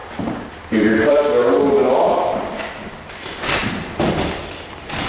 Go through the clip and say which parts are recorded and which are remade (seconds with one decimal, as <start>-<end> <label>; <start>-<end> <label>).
0.0-1.8 remade; 1.8-2.7 recorded; 2.7-5.1 remade